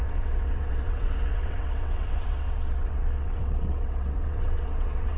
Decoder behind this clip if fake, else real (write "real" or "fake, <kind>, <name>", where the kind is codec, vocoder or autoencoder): fake, vocoder, WaveNeXt